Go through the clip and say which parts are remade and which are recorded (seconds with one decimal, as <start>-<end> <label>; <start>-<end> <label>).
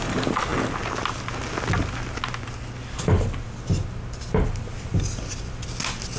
0.0-6.2 recorded